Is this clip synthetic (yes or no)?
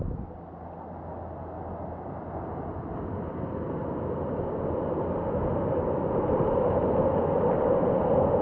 no